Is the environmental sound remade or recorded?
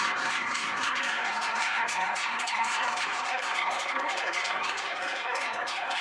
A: remade